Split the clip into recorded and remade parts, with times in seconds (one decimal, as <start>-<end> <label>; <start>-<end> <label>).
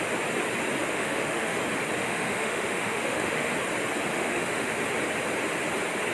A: 0.0-0.8 recorded; 0.8-1.6 remade; 1.6-2.0 recorded; 2.0-3.5 remade; 3.5-4.1 recorded; 4.1-4.8 remade; 4.8-6.1 recorded